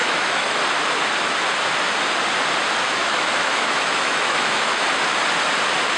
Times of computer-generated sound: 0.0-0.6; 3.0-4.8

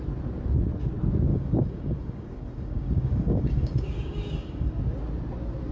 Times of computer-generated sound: 1.3-4.7